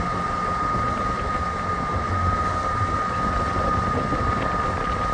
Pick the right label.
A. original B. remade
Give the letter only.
A